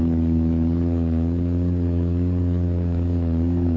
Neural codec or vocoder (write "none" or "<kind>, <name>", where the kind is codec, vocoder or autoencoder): codec, DAC